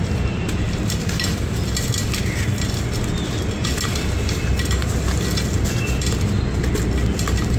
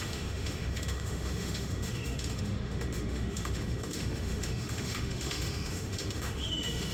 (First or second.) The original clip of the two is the first